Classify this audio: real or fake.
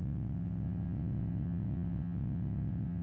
fake